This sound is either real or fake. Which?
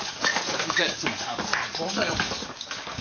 fake